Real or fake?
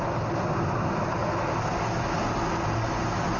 real